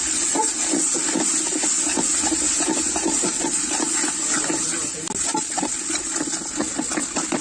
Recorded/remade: recorded